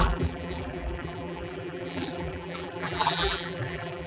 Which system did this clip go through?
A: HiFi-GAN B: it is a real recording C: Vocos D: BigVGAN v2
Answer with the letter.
D